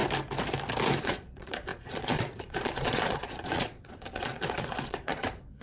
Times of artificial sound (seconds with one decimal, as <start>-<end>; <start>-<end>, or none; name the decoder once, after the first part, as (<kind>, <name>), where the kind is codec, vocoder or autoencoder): 1.0-5.6 (vocoder, Vocos)